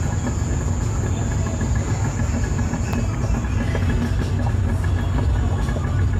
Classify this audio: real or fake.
real